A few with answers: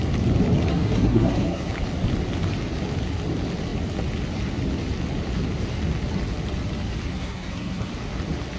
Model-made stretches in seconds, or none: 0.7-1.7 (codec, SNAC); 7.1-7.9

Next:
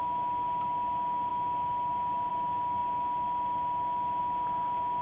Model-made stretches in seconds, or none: none

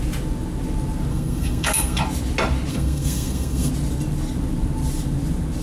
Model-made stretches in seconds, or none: 1.1-2.0 (codec, SNAC); 2.7-3.7

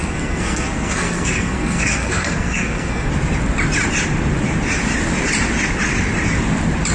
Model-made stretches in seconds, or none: 0.0-3.1 (codec, SNAC)

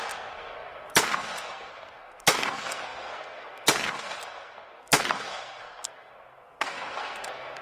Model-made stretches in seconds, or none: 0.0-7.6 (codec, SNAC)

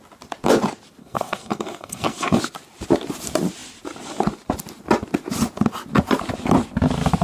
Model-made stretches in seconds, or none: 1.0-2.4 (codec, SNAC)

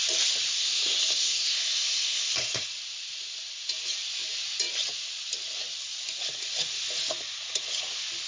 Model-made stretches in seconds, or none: 0.5-2.7 (codec, SNAC)